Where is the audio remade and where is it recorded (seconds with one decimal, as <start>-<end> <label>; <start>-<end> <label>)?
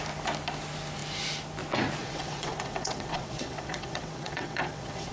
0.0-2.0 recorded; 2.0-5.1 remade